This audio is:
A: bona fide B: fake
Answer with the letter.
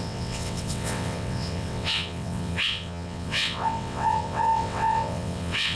B